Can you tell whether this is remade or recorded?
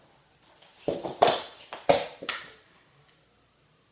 recorded